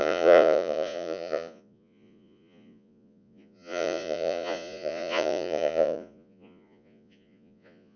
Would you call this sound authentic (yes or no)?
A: no